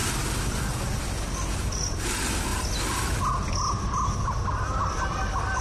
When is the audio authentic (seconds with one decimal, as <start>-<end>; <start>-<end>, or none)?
0.0-5.6